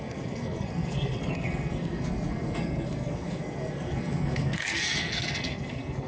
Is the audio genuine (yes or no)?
no